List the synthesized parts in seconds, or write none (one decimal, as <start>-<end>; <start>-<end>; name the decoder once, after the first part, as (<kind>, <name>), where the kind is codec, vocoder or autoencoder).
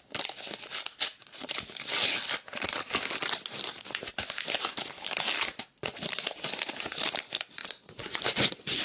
7.6-8.8 (vocoder, Vocos)